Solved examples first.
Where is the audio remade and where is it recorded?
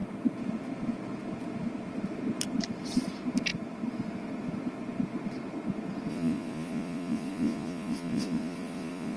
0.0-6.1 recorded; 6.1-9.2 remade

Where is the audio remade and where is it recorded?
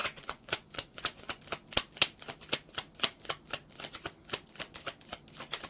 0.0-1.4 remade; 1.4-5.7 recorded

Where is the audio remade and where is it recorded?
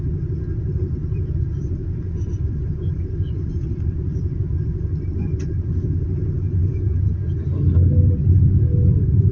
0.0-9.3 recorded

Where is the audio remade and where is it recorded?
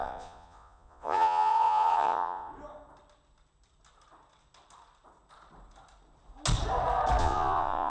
0.0-2.5 remade; 2.5-7.2 recorded; 7.2-7.9 remade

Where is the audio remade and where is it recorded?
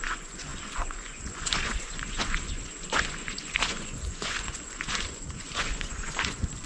0.0-6.7 remade